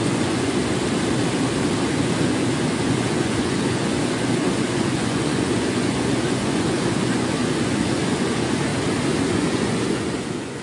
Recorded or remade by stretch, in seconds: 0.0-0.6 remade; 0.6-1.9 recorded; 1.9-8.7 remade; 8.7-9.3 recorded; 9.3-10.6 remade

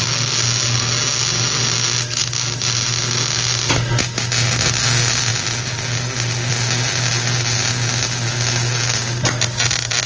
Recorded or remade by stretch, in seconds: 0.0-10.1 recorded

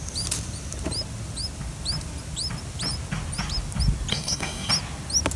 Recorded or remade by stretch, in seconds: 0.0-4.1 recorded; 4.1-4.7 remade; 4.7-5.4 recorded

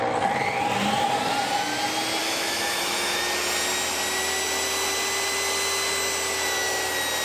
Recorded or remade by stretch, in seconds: 0.0-2.2 recorded; 2.2-3.2 remade; 3.2-7.2 recorded